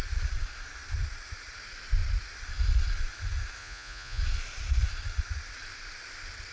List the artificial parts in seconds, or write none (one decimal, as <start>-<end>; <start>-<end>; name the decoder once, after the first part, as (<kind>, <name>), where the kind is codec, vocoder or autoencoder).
3.6-4.2 (vocoder, Vocos)